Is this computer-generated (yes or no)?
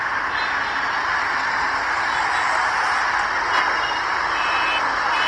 no